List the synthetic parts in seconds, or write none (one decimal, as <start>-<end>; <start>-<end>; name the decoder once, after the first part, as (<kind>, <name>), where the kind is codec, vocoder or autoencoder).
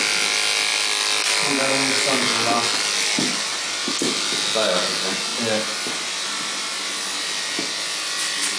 none